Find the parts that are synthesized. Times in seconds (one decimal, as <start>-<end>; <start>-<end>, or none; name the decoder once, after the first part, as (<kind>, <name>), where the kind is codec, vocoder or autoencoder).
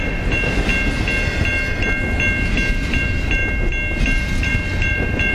0.0-0.7 (vocoder, BigVGAN v2); 2.9-3.4; 4.0-4.5